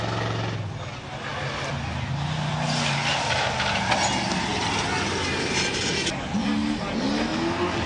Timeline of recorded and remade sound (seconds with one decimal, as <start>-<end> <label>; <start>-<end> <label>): 0.0-7.9 recorded